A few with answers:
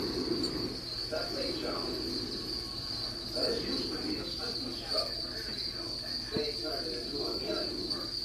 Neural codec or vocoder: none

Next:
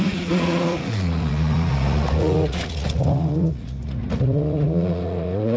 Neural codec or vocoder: vocoder, Vocos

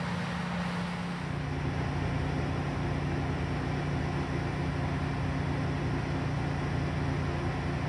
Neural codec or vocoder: none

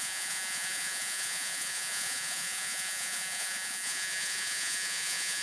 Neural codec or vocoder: vocoder, Vocos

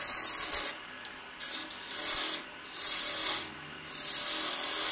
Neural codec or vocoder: none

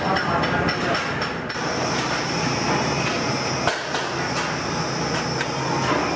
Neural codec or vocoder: none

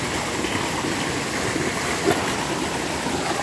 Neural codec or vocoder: none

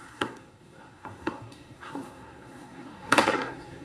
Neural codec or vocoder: codec, SNAC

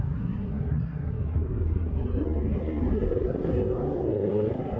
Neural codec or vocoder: codec, SNAC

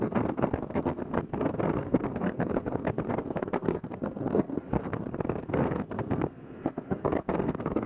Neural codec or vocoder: codec, SNAC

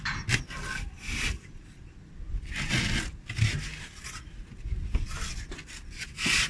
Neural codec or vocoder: none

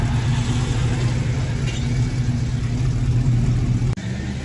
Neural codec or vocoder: none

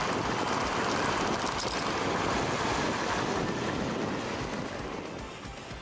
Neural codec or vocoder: none